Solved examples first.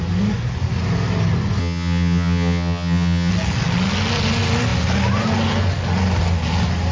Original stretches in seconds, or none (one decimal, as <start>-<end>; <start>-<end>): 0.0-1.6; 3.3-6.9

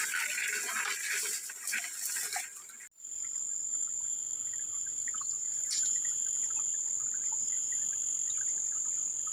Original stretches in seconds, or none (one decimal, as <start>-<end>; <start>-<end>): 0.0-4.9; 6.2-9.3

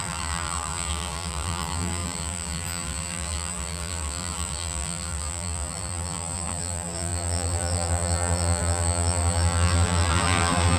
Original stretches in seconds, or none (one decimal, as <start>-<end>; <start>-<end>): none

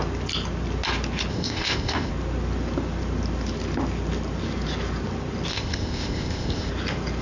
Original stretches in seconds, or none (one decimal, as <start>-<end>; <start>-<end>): 0.0-1.3; 2.1-5.5; 6.7-7.2

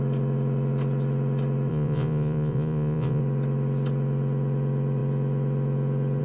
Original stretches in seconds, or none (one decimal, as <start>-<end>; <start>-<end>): 0.0-1.7; 3.2-6.2

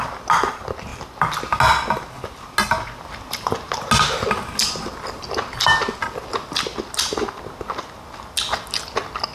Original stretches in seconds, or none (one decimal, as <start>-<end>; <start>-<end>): 0.0-9.3